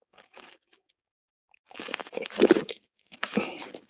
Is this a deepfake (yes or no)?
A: yes